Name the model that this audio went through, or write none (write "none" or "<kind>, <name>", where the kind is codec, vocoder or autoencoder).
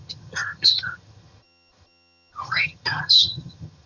vocoder, HiFi-GAN